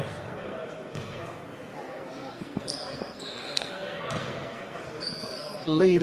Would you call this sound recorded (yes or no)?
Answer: no